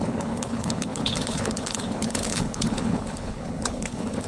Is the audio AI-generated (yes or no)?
yes